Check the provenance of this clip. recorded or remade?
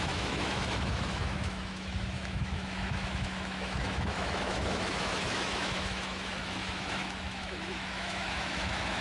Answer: remade